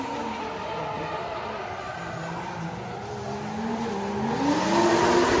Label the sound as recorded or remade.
recorded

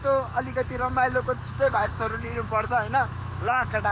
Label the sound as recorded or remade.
remade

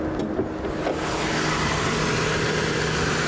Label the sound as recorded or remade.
recorded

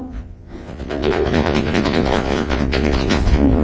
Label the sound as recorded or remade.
remade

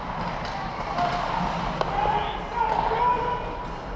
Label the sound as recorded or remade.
recorded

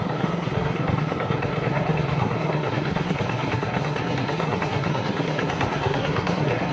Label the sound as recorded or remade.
remade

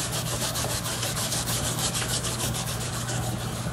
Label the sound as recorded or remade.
remade